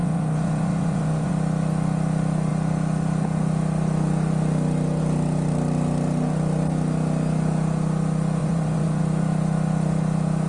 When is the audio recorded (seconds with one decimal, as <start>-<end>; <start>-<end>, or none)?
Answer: 1.3-8.4; 9.0-10.5